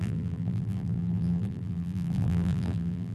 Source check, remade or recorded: remade